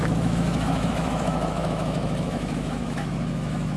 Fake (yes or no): yes